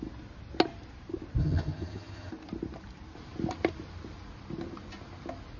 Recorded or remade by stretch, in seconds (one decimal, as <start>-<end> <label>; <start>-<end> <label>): 0.0-1.4 recorded; 1.4-2.3 remade; 2.3-5.6 recorded